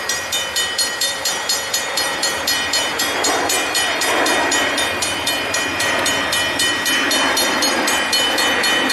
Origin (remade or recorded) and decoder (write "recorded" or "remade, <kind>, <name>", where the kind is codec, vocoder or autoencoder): remade, vocoder, BigVGAN v2